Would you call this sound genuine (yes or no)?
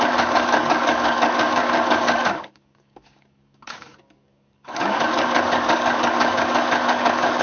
no